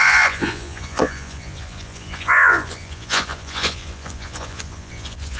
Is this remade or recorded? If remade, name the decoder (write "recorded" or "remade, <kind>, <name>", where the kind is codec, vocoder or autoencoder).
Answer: remade, vocoder, Vocos